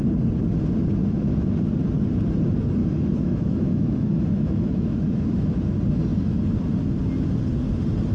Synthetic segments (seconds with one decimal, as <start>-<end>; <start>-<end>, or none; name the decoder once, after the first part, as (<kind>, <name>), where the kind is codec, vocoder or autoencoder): 1.0-1.6 (autoencoder, DAC-VAE); 2.8-5.5